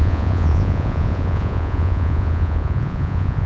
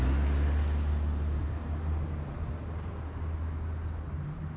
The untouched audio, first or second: second